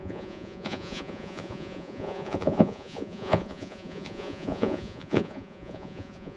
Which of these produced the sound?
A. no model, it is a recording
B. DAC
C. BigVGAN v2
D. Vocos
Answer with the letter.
D